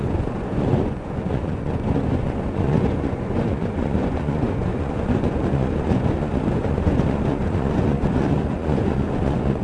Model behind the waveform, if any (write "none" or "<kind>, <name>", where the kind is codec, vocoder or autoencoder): vocoder, Vocos